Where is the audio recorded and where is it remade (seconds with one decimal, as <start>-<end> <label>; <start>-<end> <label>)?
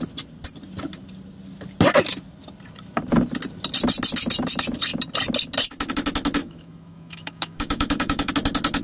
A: 0.0-6.4 recorded; 6.4-8.3 remade; 8.3-8.8 recorded